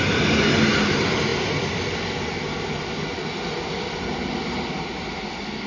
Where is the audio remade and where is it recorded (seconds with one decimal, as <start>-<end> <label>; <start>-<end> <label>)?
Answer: 0.0-5.7 recorded